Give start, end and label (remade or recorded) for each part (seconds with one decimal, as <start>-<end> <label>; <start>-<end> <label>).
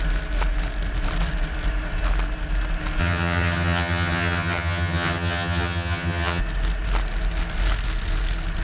0.0-3.0 recorded; 3.0-6.4 remade; 6.4-8.6 recorded